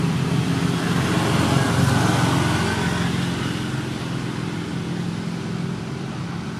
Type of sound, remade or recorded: recorded